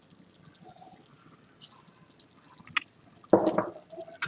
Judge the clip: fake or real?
real